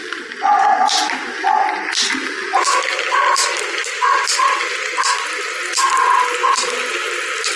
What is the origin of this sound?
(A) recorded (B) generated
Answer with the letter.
A